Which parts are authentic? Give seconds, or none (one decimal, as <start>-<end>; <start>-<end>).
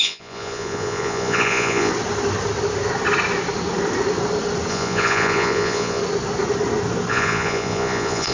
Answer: 1.9-4.7; 6.0-7.1